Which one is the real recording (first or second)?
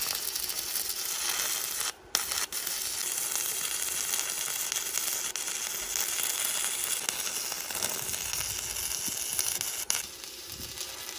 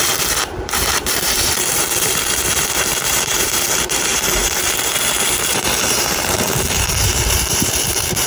first